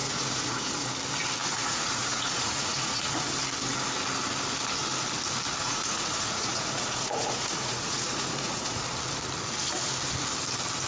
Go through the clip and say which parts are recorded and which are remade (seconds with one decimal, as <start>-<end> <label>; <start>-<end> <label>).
0.0-0.9 remade; 0.9-1.4 recorded; 1.4-3.3 remade; 3.3-5.6 recorded; 5.6-8.8 remade; 8.8-10.9 recorded